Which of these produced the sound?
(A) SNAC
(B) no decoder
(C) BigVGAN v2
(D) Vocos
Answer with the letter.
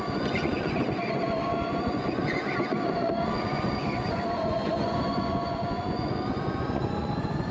D